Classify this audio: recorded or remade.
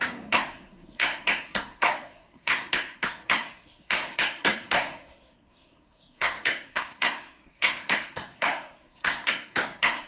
remade